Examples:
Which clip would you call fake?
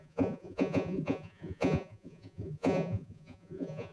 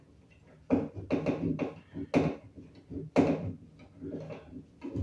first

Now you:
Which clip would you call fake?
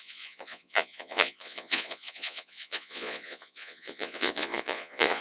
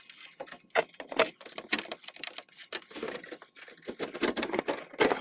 first